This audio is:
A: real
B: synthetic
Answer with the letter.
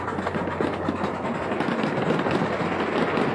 A